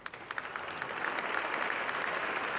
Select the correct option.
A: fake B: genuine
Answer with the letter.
B